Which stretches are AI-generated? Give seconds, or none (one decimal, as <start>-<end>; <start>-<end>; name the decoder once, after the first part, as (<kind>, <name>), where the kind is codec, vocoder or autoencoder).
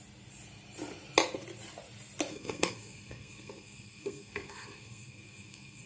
2.3-5.9 (codec, SNAC)